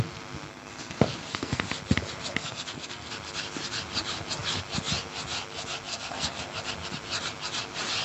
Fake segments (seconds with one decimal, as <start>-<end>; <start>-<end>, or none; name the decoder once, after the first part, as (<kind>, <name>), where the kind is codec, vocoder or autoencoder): 0.5-1.7 (codec, SNAC); 2.4-3.1; 5.9-6.4